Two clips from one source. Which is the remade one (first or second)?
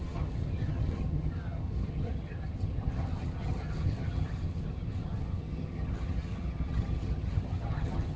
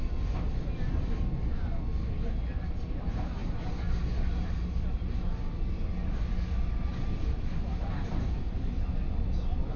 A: first